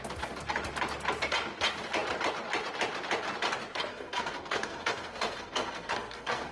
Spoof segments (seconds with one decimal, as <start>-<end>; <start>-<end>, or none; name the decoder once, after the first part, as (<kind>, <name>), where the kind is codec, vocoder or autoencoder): 3.9-6.5 (codec, SNAC)

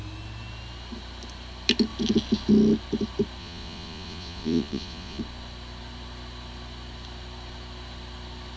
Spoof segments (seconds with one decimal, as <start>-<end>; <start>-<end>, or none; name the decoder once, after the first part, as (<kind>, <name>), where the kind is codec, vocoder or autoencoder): 3.4-5.2 (vocoder, Vocos)

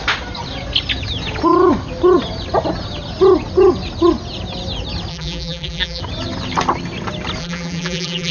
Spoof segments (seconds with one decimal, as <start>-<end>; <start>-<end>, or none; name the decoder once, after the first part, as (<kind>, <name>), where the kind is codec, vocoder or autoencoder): 5.1-6.0 (vocoder, BigVGAN v2); 7.4-8.3

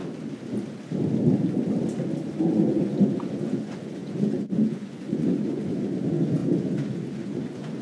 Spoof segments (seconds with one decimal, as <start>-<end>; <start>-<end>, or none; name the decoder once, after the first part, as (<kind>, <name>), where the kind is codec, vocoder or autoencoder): 2.4-7.8 (vocoder, Vocos)

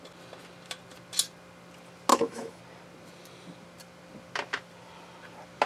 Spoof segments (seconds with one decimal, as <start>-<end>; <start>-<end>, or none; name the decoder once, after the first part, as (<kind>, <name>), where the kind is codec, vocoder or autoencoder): 2.1-2.6 (autoencoder, DAC-VAE)

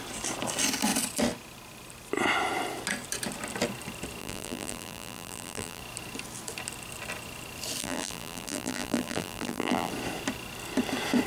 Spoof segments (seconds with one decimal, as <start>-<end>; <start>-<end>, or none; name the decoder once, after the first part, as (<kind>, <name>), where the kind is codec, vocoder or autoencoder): 4.2-5.8 (vocoder, BigVGAN v2); 7.8-9.9

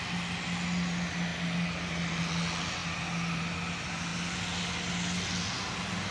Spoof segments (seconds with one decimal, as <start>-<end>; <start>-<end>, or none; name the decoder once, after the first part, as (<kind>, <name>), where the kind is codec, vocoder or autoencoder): none

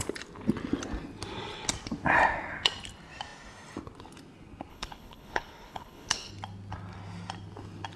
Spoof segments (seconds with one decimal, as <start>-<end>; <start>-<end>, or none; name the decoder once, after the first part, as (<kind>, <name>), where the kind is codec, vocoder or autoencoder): 4.7-6.3 (codec, HILCodec)